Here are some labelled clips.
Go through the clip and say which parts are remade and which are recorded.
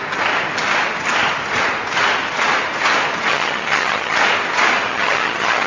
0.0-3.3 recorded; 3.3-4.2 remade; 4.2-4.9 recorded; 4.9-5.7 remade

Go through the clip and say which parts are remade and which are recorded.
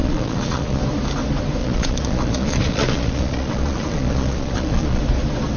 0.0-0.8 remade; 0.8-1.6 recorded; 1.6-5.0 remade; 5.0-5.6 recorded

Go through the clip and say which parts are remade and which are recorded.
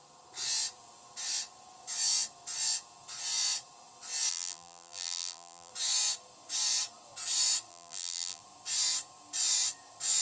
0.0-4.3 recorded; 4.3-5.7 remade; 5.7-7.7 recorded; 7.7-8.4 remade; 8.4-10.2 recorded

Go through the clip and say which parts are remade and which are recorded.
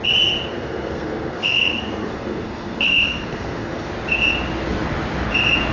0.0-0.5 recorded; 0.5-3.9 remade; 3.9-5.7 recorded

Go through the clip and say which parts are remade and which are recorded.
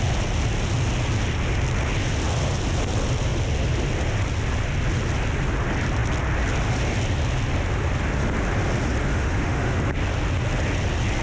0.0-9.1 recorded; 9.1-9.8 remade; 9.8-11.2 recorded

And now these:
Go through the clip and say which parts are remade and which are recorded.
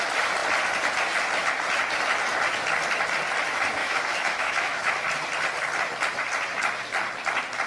0.0-3.8 recorded; 3.8-5.0 remade; 5.0-7.7 recorded